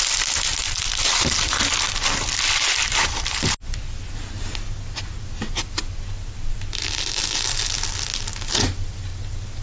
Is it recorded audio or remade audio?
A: recorded